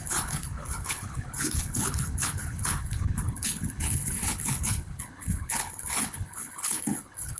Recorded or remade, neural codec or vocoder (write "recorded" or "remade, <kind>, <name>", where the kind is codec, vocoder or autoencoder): remade, codec, HILCodec